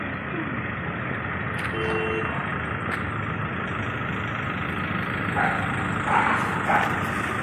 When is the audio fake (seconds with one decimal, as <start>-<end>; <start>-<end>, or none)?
none